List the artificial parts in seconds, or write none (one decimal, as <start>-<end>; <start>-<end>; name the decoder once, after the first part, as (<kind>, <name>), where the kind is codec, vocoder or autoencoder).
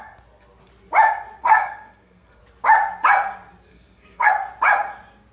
1.4-2.4 (codec, SNAC); 3.7-4.3